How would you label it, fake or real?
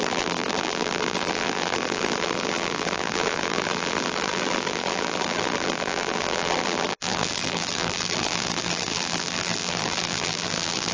fake